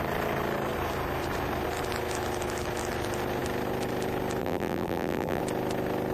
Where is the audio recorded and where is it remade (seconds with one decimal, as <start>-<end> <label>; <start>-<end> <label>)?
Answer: 0.0-4.4 recorded; 4.4-5.4 remade; 5.4-6.1 recorded